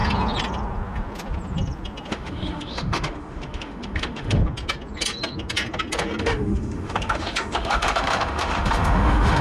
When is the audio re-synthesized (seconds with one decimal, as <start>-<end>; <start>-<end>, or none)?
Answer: 2.1-4.4; 6.2-9.4